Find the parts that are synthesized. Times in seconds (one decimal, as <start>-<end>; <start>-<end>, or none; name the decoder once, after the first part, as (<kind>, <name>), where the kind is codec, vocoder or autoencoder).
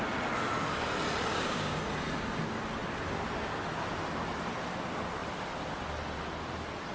1.3-1.8 (codec, DAC)